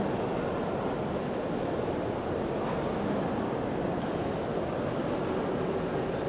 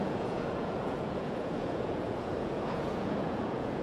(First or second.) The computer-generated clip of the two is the second